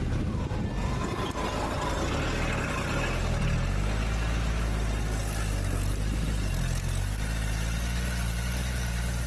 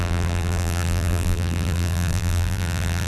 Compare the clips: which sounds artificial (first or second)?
second